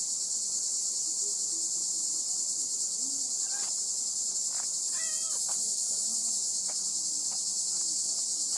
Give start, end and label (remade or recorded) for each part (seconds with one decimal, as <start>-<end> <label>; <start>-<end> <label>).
0.0-8.6 recorded